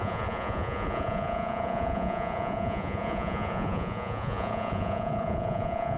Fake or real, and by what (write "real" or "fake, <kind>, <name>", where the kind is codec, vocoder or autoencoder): fake, vocoder, Vocos